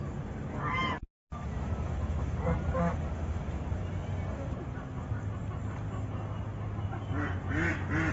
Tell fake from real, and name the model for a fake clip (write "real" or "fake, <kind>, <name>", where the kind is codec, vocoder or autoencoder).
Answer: real